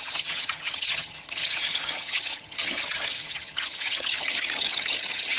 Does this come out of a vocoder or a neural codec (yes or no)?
yes